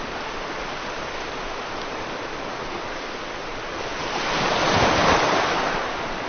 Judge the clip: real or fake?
real